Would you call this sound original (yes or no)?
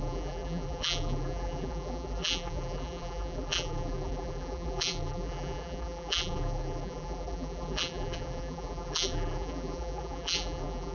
no